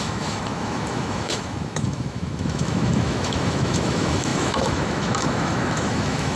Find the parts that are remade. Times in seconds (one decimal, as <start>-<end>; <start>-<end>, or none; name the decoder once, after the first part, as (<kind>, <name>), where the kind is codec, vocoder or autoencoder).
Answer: 0.0-6.4 (autoencoder, DAC-VAE)

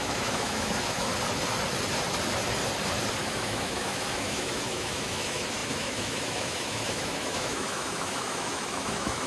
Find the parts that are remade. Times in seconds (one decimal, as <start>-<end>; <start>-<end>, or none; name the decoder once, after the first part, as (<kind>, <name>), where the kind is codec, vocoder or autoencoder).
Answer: 0.0-1.1 (autoencoder, DAC-VAE); 3.2-9.3

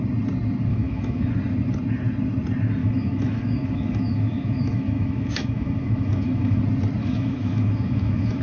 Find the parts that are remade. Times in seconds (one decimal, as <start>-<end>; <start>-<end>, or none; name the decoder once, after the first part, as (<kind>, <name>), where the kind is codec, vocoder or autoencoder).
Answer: 0.7-1.3 (autoencoder, DAC-VAE); 2.8-6.6; 7.0-8.4

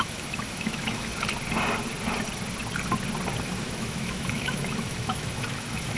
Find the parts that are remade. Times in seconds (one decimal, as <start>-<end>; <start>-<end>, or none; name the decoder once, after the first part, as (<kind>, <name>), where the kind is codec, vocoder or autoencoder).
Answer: 0.0-1.1 (autoencoder, DAC-VAE); 3.4-6.0